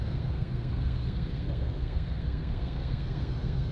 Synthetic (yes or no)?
yes